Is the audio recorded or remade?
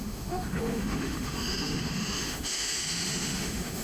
remade